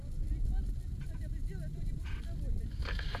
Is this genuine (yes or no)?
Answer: yes